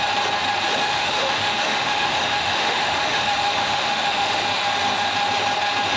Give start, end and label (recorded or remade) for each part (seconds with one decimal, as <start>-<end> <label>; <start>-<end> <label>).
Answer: 0.0-0.8 recorded; 0.8-4.4 remade; 4.4-6.0 recorded

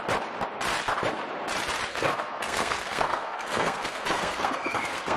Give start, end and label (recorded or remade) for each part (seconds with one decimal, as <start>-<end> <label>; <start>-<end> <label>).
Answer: 0.0-1.9 recorded; 1.9-5.2 remade

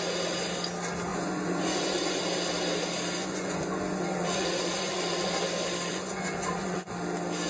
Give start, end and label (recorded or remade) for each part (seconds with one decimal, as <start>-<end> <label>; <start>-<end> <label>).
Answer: 0.0-1.1 recorded; 1.1-2.2 remade; 2.2-3.2 recorded; 3.2-5.3 remade; 5.3-5.9 recorded; 5.9-6.9 remade; 6.9-7.5 recorded